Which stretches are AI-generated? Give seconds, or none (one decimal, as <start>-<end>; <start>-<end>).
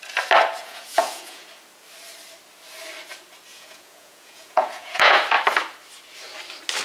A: 0.6-1.4; 3.5-5.2